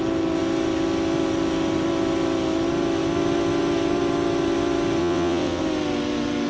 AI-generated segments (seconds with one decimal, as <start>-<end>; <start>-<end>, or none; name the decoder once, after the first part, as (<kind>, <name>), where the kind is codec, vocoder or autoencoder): 5.0-5.6 (vocoder, WaveNeXt)